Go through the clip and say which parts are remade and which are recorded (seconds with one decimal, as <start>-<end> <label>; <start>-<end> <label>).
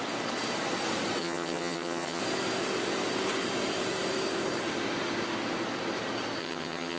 0.0-1.2 recorded; 1.2-2.2 remade; 2.2-6.4 recorded; 6.4-7.0 remade